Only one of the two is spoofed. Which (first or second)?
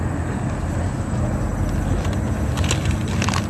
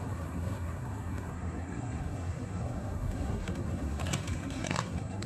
second